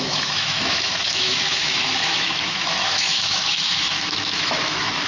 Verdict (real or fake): fake